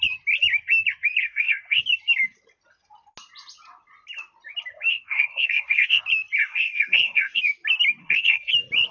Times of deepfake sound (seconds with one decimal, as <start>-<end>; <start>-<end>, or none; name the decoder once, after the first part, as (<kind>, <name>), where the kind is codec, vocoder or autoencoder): 1.2-1.8 (codec, SNAC); 4.9-6.0; 6.4-7.4; 8.0-8.5